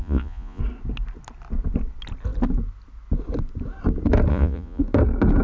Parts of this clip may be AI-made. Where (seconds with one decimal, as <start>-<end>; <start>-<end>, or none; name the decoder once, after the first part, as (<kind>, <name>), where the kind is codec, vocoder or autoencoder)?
0.0-0.6 (vocoder, Vocos); 4.3-4.8